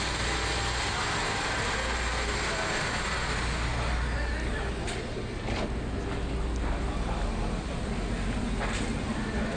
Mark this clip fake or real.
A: real